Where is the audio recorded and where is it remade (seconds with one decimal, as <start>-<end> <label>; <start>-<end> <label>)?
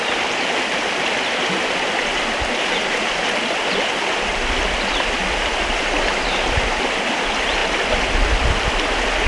0.0-9.3 recorded